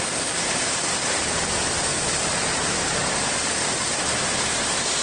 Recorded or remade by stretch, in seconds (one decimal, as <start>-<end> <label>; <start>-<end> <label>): 0.0-5.0 recorded